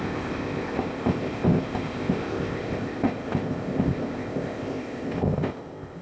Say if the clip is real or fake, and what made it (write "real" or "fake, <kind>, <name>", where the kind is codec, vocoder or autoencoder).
fake, codec, ZipCodec